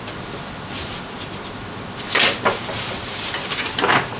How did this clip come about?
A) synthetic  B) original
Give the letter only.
B